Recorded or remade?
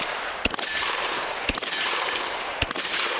remade